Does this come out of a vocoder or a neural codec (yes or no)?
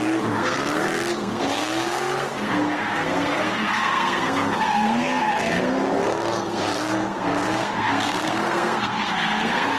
yes